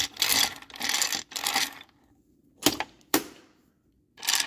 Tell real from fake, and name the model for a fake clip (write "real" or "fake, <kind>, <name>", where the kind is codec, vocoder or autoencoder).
fake, vocoder, BigVGAN v2